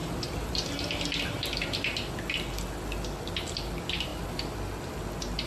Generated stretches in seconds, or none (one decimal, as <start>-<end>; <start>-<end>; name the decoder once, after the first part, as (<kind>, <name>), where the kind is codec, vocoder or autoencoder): none